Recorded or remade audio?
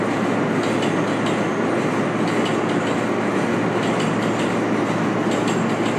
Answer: recorded